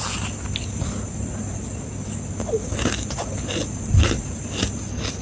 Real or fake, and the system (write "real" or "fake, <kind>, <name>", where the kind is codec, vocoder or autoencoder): real